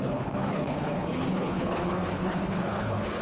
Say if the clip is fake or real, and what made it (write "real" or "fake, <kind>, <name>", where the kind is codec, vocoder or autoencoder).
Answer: fake, codec, HILCodec